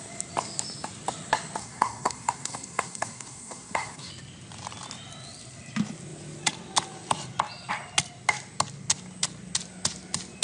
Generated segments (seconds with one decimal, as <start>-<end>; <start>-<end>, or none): 1.6-4.1